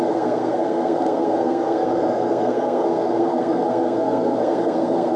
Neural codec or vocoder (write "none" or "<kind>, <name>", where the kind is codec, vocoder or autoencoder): codec, SNAC